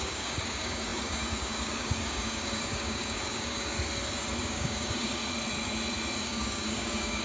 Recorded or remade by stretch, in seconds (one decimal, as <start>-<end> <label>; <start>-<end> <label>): 0.0-3.7 remade; 3.7-4.4 recorded; 4.4-5.2 remade; 5.2-6.2 recorded; 6.2-7.2 remade